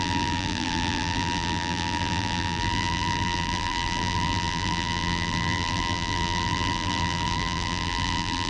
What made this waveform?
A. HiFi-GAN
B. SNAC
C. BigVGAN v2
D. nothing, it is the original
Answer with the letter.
C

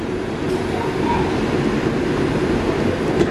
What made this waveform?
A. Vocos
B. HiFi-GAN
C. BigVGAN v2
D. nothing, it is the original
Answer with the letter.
D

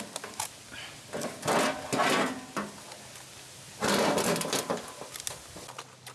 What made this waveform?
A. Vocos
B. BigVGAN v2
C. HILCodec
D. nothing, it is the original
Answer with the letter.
D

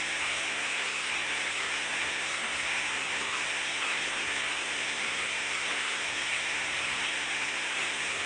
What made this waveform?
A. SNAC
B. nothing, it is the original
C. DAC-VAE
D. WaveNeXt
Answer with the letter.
A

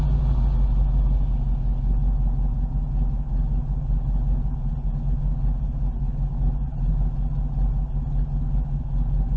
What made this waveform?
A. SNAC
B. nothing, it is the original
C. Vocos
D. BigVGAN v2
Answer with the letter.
B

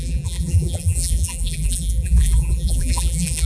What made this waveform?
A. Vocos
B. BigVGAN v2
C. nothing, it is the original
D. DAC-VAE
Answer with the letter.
B